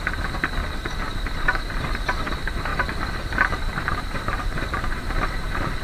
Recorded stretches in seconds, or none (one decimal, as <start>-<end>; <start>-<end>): 0.0-0.6; 1.6-2.7; 5.0-5.8

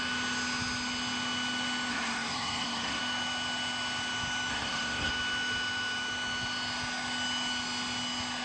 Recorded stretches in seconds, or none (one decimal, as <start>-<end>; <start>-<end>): 0.0-1.9; 3.0-4.5; 5.1-8.4

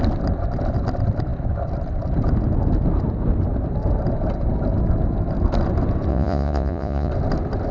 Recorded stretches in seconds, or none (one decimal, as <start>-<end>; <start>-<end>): 0.0-6.1; 7.1-7.7

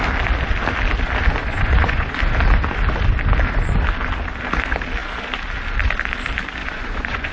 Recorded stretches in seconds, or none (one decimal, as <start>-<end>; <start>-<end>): 0.0-1.4; 2.2-6.6